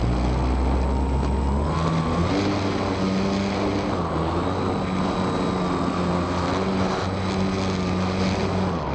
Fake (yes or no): no